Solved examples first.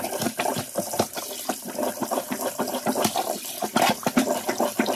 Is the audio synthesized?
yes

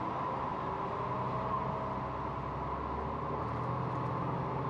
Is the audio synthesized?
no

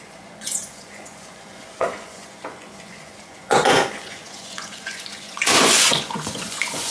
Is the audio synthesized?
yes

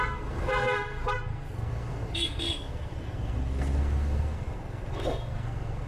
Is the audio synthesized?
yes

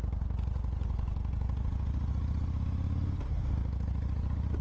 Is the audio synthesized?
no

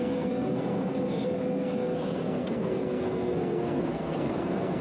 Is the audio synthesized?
yes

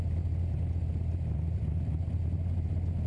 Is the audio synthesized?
no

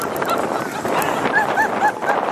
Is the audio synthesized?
yes